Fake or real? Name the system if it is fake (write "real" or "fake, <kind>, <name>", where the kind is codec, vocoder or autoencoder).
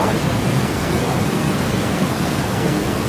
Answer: fake, codec, SNAC